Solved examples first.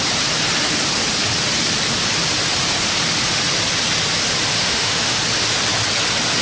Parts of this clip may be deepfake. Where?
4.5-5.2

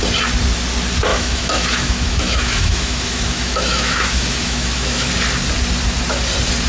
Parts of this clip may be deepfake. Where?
1.1-5.1

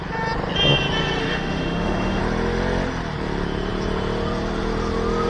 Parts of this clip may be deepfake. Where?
1.2-2.2

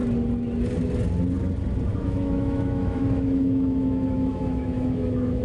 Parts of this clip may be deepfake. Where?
1.9-5.4